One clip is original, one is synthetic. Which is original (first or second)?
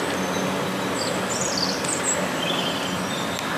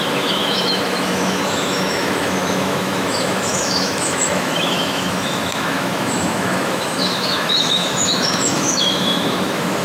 first